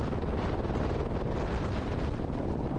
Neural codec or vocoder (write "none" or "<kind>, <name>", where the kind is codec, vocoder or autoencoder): none